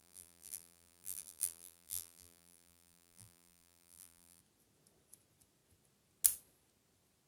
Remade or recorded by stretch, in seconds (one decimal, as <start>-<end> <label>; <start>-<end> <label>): 0.0-4.4 remade; 4.4-7.3 recorded